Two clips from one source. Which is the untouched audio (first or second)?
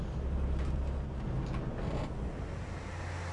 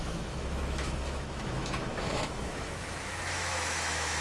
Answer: first